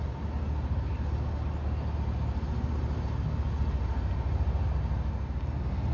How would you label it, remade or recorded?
recorded